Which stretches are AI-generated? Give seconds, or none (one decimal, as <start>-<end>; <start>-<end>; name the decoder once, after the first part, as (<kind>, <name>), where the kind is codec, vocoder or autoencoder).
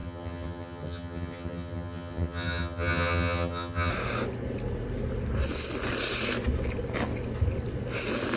0.0-3.9 (vocoder, HiFi-GAN)